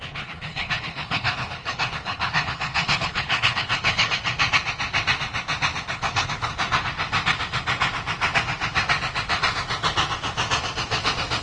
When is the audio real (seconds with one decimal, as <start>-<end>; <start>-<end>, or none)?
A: 4.2-5.9; 6.5-11.4